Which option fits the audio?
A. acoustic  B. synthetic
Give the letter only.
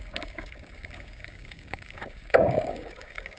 B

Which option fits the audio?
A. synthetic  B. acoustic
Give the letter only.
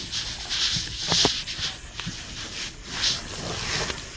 B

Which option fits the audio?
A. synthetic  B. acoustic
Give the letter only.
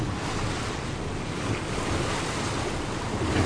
B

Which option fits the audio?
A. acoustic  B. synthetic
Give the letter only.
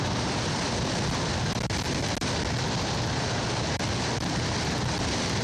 A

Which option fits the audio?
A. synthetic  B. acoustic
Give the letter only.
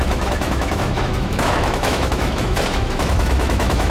A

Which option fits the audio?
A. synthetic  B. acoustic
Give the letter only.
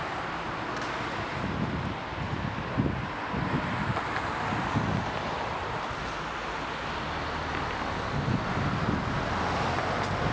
B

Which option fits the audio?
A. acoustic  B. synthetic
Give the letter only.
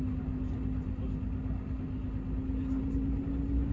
A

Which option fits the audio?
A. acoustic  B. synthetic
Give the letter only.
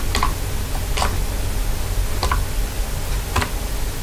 A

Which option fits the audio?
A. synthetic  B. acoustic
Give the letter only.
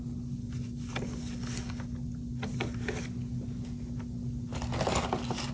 B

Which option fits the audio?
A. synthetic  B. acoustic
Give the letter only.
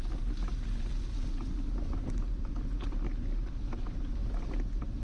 B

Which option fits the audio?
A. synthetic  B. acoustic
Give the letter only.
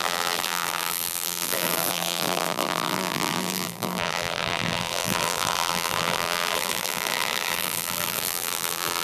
A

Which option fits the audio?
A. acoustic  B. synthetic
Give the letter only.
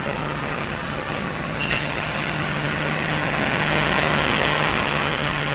B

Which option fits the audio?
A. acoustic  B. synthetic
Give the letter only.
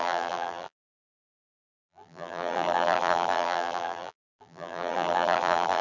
B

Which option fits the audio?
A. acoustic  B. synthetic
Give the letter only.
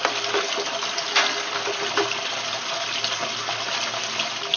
A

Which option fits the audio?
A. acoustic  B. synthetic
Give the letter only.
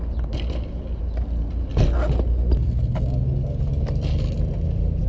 A